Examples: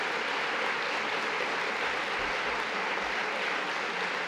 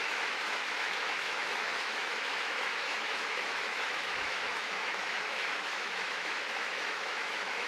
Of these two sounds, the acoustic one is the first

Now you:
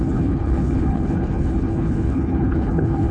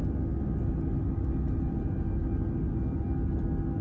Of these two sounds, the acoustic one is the second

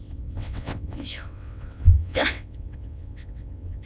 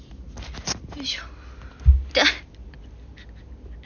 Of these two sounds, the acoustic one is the second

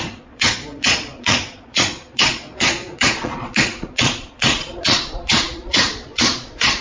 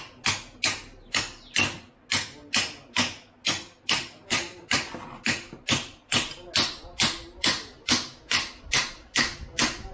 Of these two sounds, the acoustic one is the second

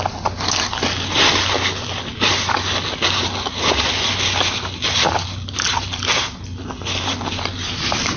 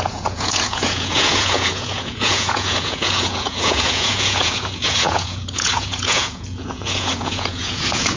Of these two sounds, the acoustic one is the first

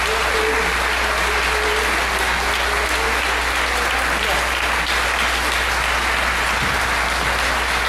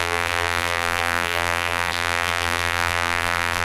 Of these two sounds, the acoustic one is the first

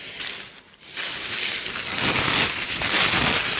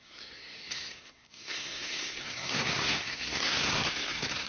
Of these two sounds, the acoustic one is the first